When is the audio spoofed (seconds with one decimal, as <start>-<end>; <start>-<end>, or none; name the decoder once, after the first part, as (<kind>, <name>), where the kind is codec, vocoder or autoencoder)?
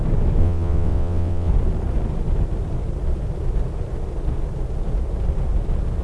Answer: 0.4-1.5 (vocoder, WaveNeXt)